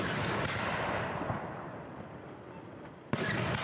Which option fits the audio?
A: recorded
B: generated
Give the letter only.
A